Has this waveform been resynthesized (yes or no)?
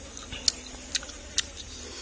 no